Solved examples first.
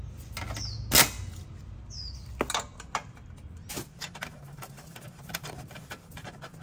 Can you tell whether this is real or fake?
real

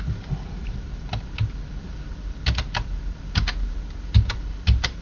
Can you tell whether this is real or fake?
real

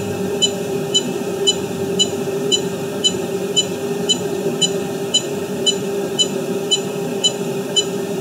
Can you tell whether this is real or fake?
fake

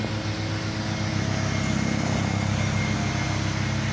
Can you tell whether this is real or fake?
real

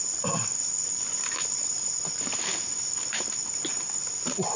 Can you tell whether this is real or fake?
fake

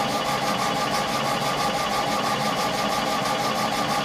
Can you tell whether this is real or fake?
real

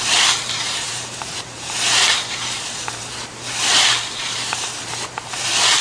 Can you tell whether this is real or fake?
fake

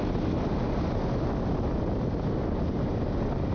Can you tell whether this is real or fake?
real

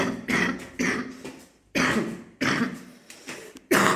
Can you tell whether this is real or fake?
fake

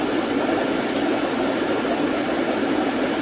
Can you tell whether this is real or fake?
real